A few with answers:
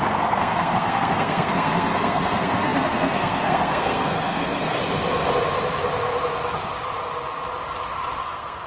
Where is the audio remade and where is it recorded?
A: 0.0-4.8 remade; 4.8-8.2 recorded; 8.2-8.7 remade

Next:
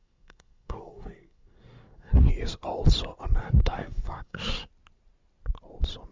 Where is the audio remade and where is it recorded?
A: 0.0-2.3 remade; 2.3-3.4 recorded; 3.4-4.7 remade; 4.7-6.1 recorded

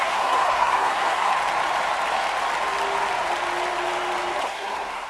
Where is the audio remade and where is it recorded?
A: 0.0-1.3 remade; 1.3-4.4 recorded; 4.4-5.1 remade

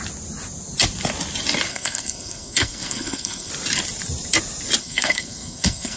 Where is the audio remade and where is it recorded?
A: 0.0-1.7 recorded; 1.7-3.5 remade; 3.5-4.8 recorded; 4.8-6.0 remade